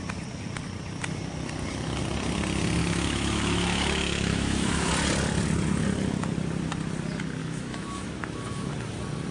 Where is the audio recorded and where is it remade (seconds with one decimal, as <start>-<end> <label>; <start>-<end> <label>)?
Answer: 0.0-2.8 recorded; 2.8-4.9 remade; 4.9-7.4 recorded; 7.4-8.7 remade; 8.7-9.3 recorded